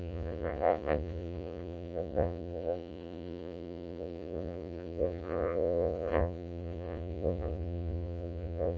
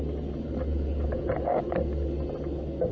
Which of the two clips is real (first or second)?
second